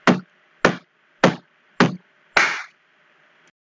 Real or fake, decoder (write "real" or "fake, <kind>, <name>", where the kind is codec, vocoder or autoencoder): real